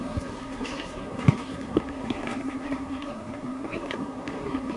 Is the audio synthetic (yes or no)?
yes